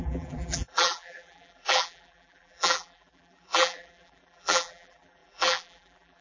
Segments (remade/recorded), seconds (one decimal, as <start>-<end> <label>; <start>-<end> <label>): 0.0-6.2 remade